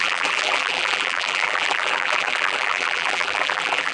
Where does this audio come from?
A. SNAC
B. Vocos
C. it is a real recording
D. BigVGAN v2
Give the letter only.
D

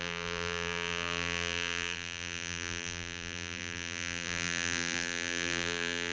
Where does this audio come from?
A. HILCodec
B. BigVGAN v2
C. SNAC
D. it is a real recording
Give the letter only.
B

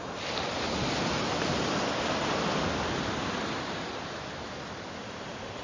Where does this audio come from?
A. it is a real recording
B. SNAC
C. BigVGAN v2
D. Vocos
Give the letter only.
A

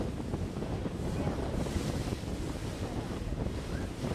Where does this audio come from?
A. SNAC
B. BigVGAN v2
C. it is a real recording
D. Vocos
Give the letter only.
B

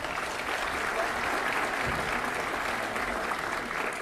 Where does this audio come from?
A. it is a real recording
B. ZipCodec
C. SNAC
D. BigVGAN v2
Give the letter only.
A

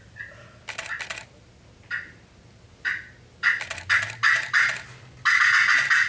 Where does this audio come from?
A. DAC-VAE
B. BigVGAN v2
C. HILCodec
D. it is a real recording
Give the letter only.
D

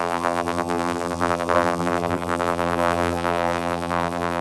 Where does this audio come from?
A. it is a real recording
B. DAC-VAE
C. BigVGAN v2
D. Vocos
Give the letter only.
C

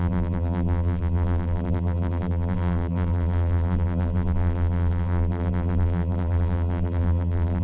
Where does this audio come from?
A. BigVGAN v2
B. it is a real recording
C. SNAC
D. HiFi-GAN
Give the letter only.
A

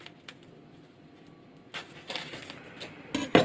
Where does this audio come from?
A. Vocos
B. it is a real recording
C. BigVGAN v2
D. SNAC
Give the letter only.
B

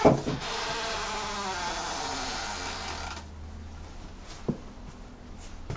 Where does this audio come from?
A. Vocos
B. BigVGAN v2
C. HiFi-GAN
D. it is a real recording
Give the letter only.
D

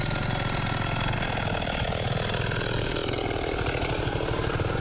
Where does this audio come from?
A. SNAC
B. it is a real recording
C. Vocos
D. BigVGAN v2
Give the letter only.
B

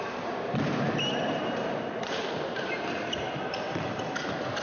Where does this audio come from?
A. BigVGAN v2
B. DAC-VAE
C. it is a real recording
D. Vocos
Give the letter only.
A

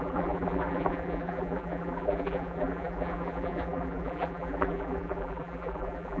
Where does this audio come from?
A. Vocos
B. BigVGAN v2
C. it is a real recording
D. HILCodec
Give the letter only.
B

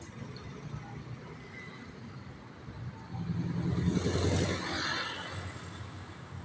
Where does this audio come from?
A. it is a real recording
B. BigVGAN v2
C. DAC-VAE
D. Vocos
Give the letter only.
A